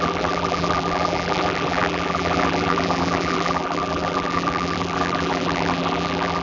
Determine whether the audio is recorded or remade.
remade